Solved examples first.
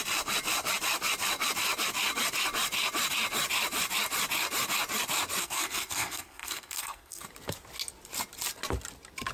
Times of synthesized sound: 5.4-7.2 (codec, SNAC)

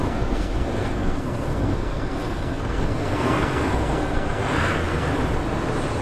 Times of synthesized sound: 0.0-5.1 (codec, SNAC)

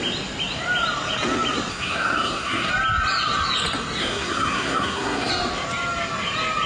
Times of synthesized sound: 1.7-2.7 (codec, SNAC); 4.0-5.3